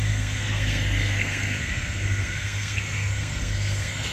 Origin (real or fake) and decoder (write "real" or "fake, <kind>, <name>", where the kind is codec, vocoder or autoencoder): fake, codec, SNAC